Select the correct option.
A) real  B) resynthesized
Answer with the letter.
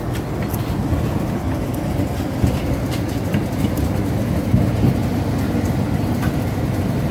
A